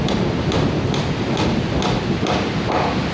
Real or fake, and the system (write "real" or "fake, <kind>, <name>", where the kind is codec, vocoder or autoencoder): real